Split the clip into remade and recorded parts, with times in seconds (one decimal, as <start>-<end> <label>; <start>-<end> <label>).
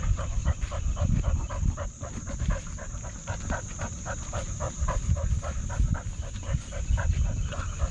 0.0-0.4 recorded; 0.4-3.4 remade; 3.4-4.3 recorded; 4.3-5.8 remade; 5.8-7.9 recorded